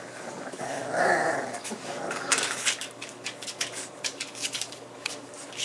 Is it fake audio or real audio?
fake